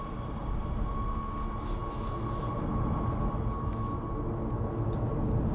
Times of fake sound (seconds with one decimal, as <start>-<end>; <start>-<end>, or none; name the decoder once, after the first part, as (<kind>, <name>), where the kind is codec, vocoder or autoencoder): 0.4-0.9 (vocoder, BigVGAN v2)

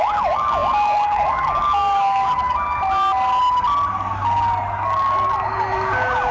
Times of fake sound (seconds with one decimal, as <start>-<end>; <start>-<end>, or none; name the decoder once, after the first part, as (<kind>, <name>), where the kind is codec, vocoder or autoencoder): 0.0-2.8 (codec, DAC); 4.8-6.3